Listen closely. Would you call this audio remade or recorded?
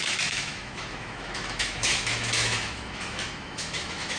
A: remade